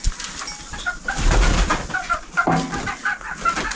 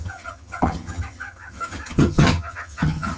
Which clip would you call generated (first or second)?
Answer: second